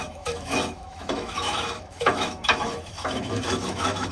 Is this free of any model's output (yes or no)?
no